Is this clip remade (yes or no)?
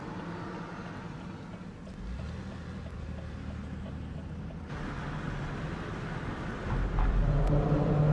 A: no